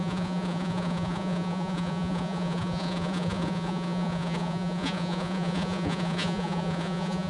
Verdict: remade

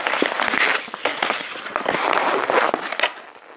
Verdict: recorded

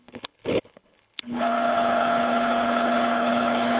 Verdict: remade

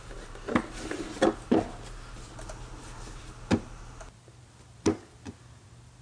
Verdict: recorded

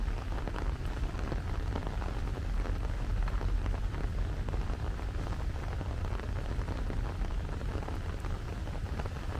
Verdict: recorded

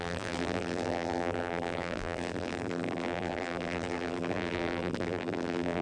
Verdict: remade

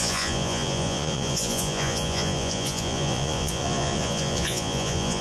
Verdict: remade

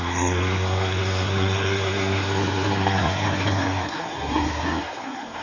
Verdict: remade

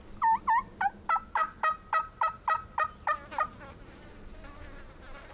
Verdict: recorded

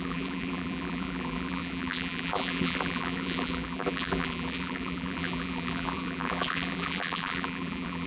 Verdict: remade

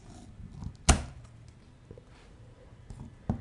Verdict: recorded